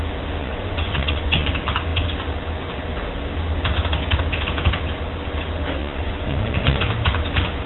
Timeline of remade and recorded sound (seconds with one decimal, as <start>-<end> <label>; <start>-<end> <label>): 0.0-0.4 recorded; 0.4-1.5 remade; 1.5-5.8 recorded; 5.8-6.8 remade; 6.8-7.7 recorded